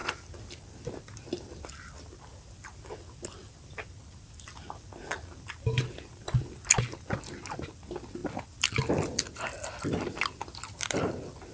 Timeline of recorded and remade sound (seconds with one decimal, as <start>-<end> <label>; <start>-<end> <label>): 0.0-2.9 remade; 2.9-8.2 recorded; 8.2-11.1 remade; 11.1-11.5 recorded